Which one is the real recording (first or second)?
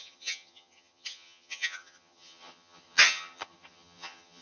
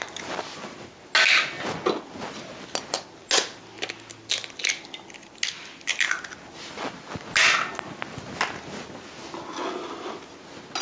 second